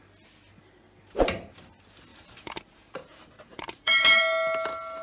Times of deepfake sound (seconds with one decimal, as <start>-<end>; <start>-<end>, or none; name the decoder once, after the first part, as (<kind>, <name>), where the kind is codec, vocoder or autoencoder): 2.1-4.2 (vocoder, BigVGAN v2)